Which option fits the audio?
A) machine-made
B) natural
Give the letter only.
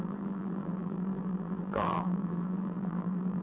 A